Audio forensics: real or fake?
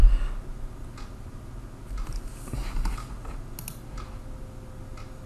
real